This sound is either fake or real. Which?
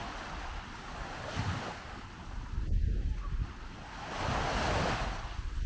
real